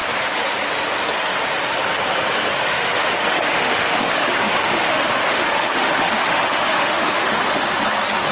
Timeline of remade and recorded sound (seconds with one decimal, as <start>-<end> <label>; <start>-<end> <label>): 0.0-2.7 recorded; 2.7-7.6 remade; 7.6-8.3 recorded